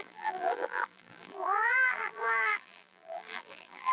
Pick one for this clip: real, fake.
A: fake